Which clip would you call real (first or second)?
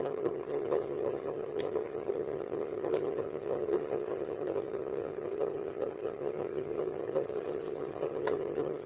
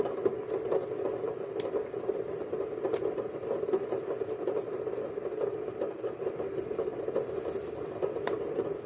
second